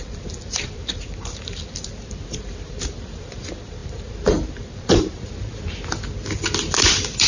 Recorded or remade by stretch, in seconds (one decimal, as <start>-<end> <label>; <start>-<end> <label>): 0.0-5.5 remade; 5.5-6.6 recorded; 6.6-7.3 remade

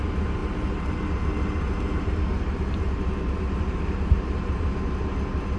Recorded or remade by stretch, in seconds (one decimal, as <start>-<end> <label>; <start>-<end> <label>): 0.0-5.6 recorded

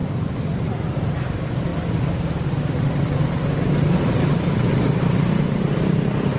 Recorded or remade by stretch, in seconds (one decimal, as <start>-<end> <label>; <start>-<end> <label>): 0.0-6.4 recorded

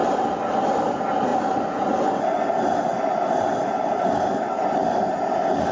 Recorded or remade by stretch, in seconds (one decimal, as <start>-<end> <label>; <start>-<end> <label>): 0.0-0.9 remade; 0.9-5.7 recorded